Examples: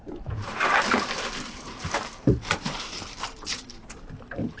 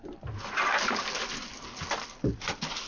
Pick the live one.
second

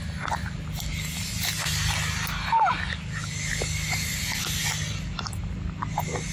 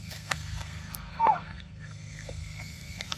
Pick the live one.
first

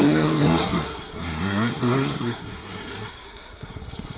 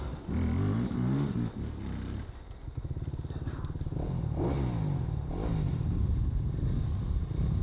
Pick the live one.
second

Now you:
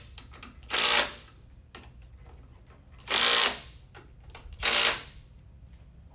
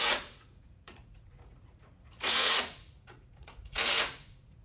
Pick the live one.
first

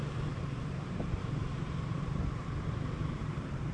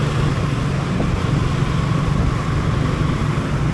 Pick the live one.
second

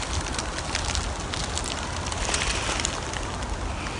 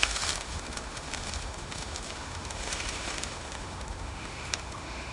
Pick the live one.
first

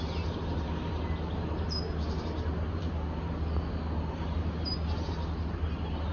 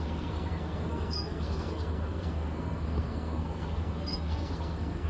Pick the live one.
first